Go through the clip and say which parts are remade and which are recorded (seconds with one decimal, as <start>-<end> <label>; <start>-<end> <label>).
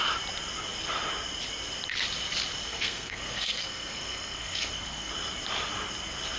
0.0-2.7 recorded; 2.7-5.1 remade; 5.1-6.4 recorded